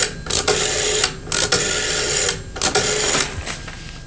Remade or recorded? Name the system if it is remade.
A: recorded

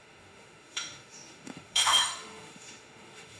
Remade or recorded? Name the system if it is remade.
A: remade, autoencoder, DAC-VAE